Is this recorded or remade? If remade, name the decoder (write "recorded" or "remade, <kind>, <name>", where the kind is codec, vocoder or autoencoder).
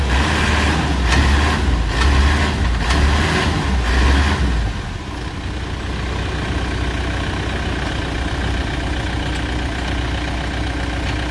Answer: recorded